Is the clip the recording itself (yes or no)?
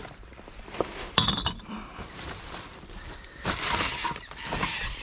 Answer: no